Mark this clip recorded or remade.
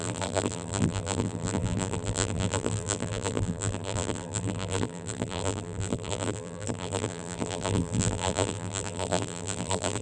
remade